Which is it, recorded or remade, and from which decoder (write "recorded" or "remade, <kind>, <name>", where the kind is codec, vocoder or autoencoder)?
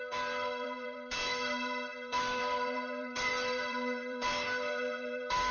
remade, vocoder, BigVGAN v2